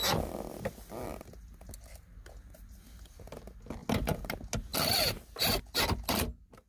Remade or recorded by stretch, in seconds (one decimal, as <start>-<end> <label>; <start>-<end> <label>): 0.0-6.7 recorded